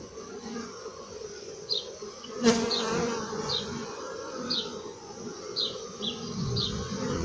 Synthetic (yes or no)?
yes